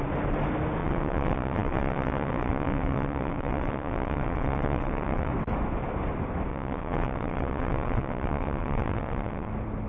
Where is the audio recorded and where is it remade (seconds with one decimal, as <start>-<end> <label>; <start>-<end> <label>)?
0.0-0.8 recorded; 0.8-5.3 remade; 5.3-6.5 recorded; 6.5-9.5 remade; 9.5-9.9 recorded